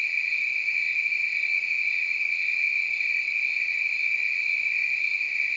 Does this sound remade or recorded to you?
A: remade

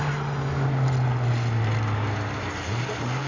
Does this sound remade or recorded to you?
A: recorded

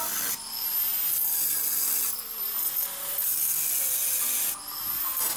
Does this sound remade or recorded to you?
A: recorded